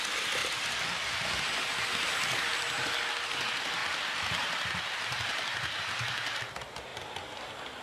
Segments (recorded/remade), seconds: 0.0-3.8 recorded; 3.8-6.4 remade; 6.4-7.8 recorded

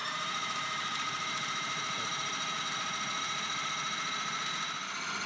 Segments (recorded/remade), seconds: 0.0-2.6 remade; 2.6-3.1 recorded; 3.1-3.7 remade; 3.7-5.3 recorded

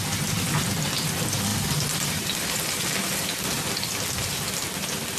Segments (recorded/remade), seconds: 0.0-5.2 recorded

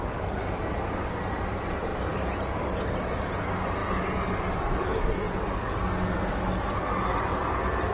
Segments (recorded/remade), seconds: 0.0-0.4 recorded; 0.4-1.4 remade; 1.4-7.9 recorded

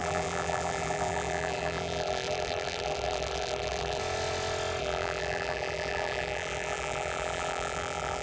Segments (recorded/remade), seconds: 0.0-4.0 remade; 4.0-4.8 recorded; 4.8-8.2 remade

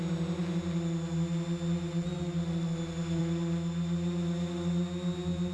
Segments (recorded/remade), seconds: 0.0-5.5 recorded